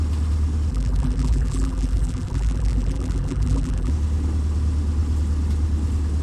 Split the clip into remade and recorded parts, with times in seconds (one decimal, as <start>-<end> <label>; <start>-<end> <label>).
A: 0.0-0.7 recorded; 0.7-3.9 remade; 3.9-6.2 recorded